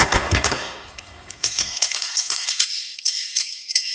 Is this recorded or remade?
remade